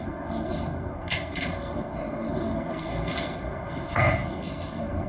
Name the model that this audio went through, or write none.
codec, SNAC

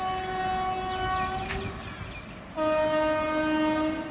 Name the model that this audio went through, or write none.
none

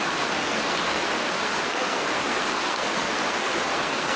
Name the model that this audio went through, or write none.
codec, SNAC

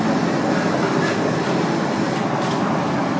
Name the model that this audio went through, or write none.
none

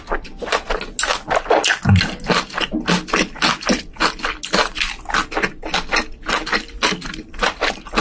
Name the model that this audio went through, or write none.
none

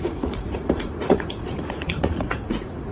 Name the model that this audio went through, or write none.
vocoder, Vocos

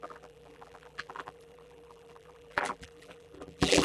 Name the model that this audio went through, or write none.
vocoder, BigVGAN v2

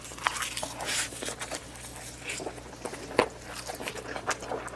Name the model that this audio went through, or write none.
none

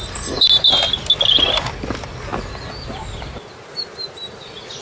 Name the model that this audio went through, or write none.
none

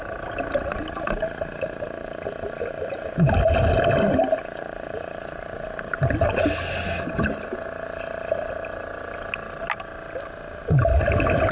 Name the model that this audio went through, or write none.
none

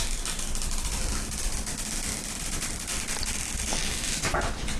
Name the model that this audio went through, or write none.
none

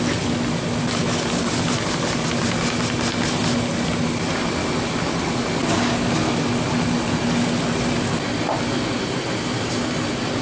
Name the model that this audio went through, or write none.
none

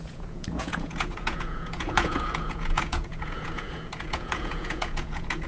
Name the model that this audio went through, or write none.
vocoder, Vocos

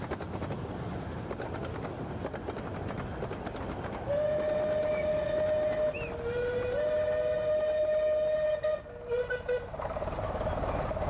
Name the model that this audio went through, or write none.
none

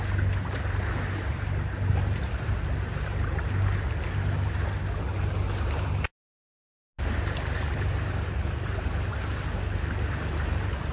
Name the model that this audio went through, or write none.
none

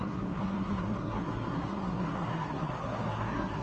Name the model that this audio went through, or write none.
codec, SNAC